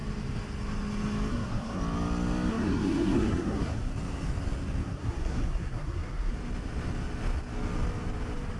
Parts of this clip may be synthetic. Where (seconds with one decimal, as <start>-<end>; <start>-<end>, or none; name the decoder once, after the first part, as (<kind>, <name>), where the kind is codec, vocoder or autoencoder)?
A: 1.3-1.8 (codec, SNAC); 2.5-3.9; 4.8-6.3

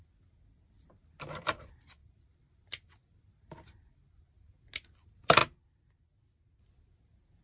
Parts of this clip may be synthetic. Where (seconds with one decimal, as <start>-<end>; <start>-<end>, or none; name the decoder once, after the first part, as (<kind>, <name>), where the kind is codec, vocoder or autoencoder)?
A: 2.0-4.4 (vocoder, BigVGAN v2)

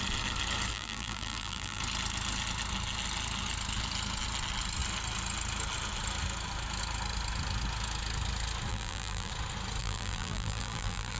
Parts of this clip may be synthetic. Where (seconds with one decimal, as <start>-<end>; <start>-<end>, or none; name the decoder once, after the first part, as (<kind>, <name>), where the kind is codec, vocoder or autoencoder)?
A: 0.7-1.8 (vocoder, BigVGAN v2); 8.7-9.3; 9.8-11.2